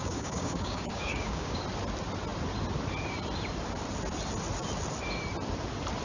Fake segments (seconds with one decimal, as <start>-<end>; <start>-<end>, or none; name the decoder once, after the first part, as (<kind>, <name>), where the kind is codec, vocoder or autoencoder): 0.0-1.6 (codec, DAC)